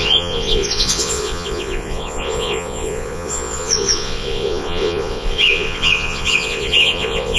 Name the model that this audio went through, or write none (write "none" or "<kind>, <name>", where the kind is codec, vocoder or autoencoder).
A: vocoder, Vocos